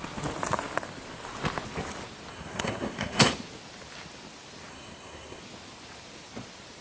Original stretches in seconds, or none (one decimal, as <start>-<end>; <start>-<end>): 0.0-2.3; 3.3-4.7; 5.4-6.8